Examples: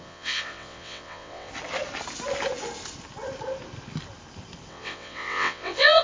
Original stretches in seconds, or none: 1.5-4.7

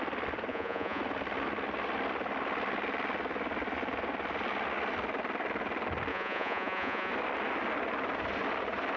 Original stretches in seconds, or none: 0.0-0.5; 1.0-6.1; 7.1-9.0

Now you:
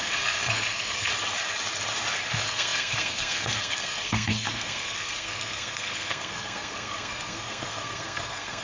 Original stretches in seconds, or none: 1.1-2.3

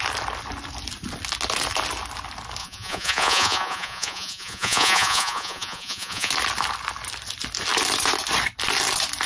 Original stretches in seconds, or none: 0.0-2.6; 6.3-9.3

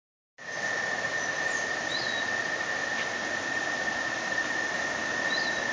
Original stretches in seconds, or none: 0.0-5.7

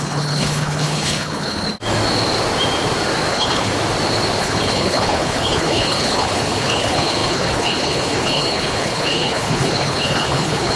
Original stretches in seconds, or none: 1.7-3.3; 3.7-4.4

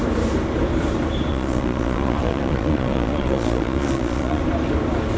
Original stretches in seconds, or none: 0.0-1.3; 4.4-5.2

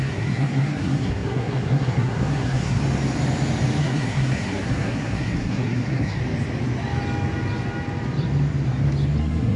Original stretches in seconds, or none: 2.8-3.8; 6.2-9.2